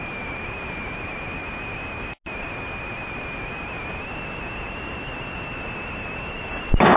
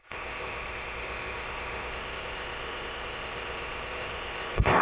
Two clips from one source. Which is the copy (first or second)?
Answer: second